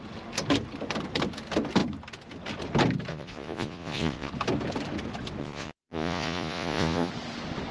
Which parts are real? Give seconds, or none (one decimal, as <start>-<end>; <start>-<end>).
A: 0.0-3.1; 4.3-5.4; 7.1-7.7